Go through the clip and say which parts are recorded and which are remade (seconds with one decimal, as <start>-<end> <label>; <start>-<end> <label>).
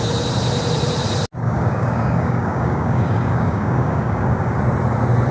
0.0-1.4 recorded; 1.4-4.6 remade; 4.6-5.3 recorded